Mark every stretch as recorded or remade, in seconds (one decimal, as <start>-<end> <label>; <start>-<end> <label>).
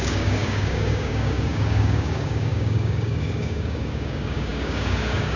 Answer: 0.0-5.4 remade